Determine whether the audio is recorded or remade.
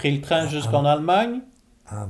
recorded